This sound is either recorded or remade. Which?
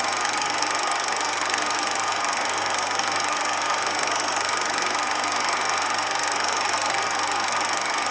remade